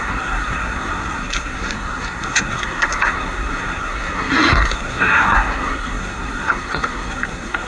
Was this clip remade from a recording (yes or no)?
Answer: yes